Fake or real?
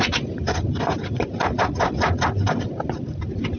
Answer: real